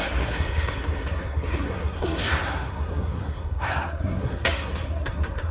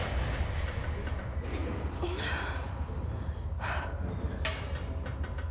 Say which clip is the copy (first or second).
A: first